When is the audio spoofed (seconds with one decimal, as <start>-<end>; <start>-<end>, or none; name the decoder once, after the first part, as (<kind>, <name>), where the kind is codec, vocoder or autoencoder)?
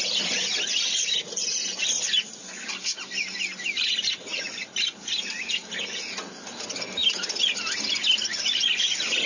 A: none